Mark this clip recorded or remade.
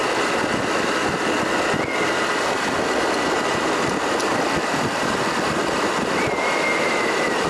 recorded